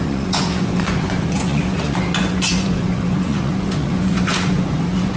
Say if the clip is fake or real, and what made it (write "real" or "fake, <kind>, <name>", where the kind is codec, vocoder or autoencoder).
fake, vocoder, Vocos